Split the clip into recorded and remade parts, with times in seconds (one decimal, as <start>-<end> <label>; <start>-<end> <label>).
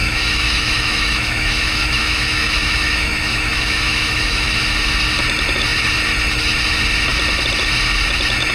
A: 0.0-4.6 remade; 4.6-8.5 recorded